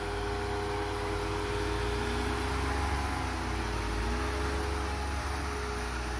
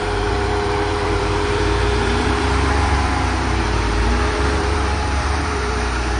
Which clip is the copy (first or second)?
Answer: second